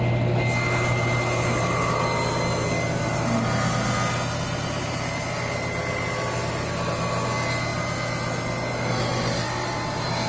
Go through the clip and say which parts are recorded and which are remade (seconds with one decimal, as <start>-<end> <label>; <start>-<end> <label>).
0.0-10.3 recorded